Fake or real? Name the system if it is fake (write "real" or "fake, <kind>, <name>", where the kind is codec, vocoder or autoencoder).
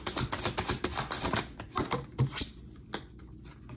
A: real